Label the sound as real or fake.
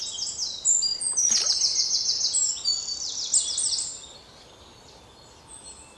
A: real